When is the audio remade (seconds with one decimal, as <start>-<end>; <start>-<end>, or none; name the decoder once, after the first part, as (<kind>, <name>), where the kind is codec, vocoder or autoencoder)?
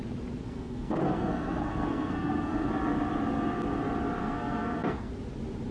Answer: 0.4-2.7 (codec, SNAC); 4.2-5.1